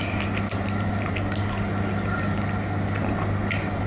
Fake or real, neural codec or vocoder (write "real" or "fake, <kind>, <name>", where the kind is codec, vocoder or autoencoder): real